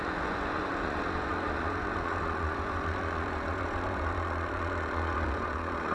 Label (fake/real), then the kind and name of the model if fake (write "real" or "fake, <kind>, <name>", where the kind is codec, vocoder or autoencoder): fake, vocoder, Vocos